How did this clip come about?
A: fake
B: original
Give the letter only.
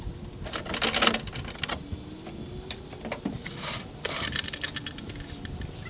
B